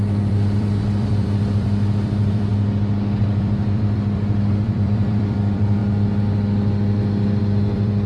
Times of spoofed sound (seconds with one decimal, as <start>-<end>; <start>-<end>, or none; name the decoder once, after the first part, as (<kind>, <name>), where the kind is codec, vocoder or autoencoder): 0.0-2.5 (vocoder, BigVGAN v2); 3.2-5.8; 7.4-8.1